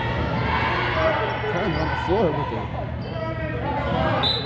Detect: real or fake real